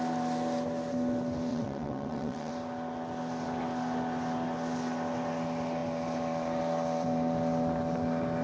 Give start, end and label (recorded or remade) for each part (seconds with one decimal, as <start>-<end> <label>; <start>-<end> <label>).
0.0-1.5 recorded; 1.5-2.5 remade; 2.5-8.4 recorded